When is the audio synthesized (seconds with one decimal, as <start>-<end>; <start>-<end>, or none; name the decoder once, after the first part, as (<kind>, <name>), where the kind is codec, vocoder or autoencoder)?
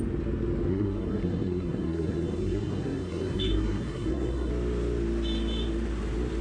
0.7-4.5 (codec, SNAC)